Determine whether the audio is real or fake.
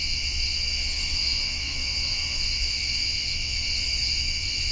fake